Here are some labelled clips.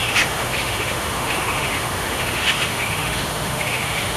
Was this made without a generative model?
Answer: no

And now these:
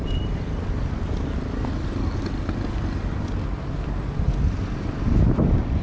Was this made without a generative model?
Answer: yes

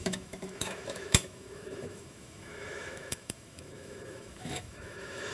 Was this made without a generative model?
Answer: no